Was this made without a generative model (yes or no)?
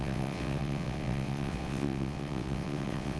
no